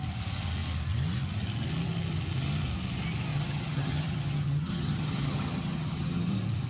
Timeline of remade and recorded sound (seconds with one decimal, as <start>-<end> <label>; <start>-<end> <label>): 0.0-3.3 recorded; 3.3-6.3 remade; 6.3-6.7 recorded